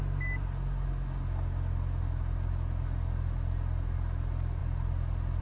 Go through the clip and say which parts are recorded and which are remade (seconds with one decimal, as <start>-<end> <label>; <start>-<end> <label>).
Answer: 0.0-5.4 recorded

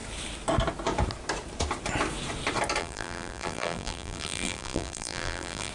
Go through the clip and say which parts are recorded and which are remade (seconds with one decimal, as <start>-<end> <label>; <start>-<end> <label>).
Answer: 0.0-2.8 recorded; 2.8-5.7 remade

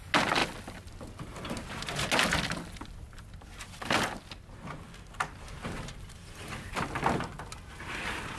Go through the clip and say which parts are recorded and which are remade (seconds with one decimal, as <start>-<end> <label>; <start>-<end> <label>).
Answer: 0.0-8.4 recorded

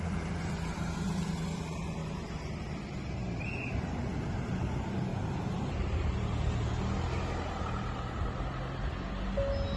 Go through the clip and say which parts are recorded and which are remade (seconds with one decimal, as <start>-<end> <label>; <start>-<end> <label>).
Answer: 0.0-9.8 recorded

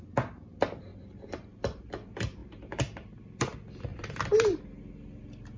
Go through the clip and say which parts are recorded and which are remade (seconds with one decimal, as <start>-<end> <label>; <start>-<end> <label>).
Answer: 0.0-0.9 recorded; 0.9-1.9 remade; 1.9-2.4 recorded; 2.4-3.1 remade; 3.1-3.9 recorded; 3.9-4.8 remade; 4.8-5.6 recorded

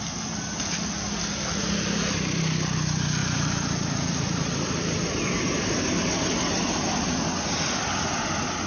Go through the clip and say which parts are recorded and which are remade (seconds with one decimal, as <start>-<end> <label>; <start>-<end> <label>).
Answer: 0.0-8.7 recorded